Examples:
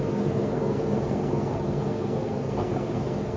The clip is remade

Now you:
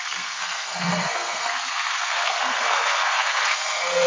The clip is remade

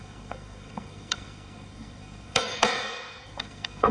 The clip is remade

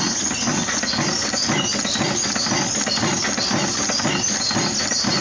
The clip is recorded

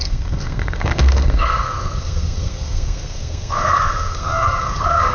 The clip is remade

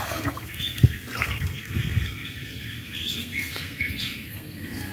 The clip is remade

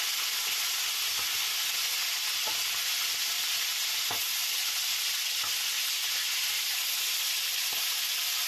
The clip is recorded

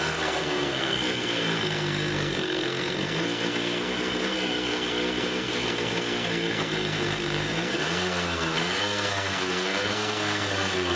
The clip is remade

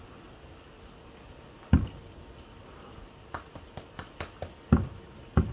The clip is recorded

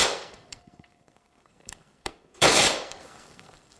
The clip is remade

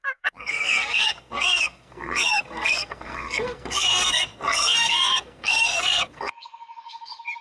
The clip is remade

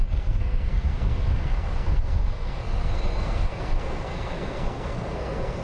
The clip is remade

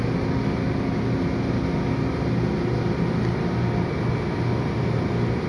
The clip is recorded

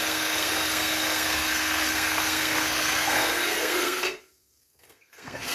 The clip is remade